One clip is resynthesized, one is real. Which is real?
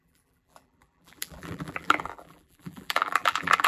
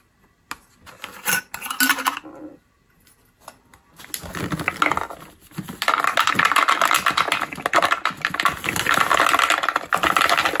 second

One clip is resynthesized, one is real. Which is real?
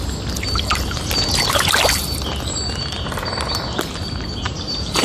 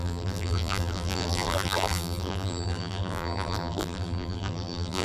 first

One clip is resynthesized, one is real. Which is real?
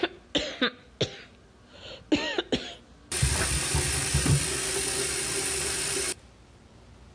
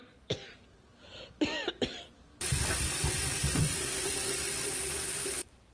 first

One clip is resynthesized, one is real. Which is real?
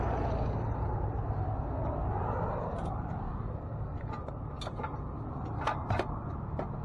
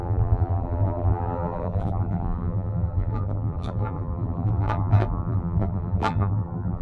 first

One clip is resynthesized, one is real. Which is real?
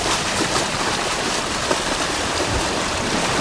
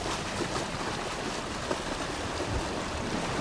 second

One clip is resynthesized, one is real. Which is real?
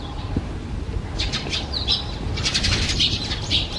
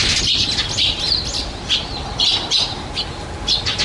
second